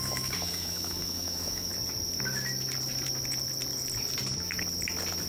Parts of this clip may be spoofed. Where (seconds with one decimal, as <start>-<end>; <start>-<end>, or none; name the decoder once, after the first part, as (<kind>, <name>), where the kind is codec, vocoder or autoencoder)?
0.0-1.7 (autoencoder, DAC-VAE)